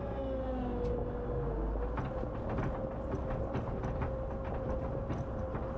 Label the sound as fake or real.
real